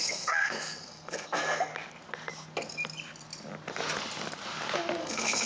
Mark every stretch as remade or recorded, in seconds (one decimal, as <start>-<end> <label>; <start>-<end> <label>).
0.0-1.7 remade; 1.7-5.0 recorded; 5.0-5.5 remade